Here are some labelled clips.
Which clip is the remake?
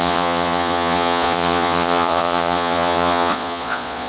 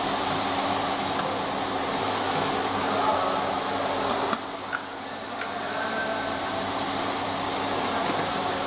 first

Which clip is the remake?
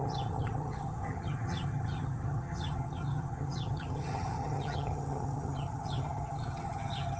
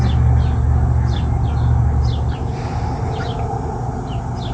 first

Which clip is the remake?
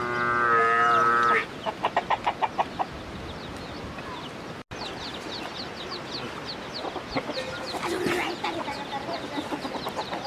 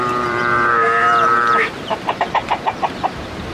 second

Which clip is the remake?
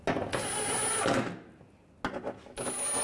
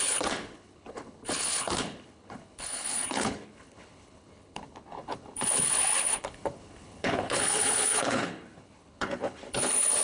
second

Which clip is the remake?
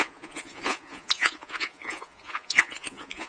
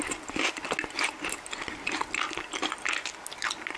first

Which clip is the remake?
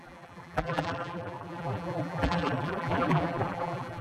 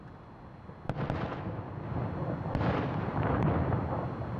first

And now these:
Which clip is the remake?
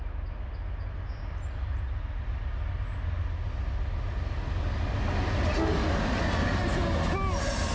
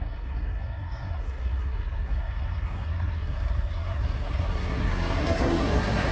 second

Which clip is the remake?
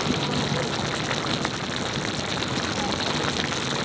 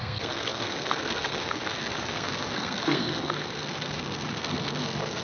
second